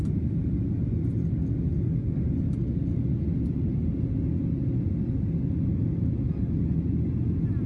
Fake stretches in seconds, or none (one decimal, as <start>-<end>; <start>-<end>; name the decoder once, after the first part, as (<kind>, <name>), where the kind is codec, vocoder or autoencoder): none